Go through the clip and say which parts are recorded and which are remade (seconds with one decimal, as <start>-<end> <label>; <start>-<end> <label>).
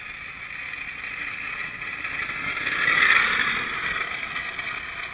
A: 0.0-5.1 recorded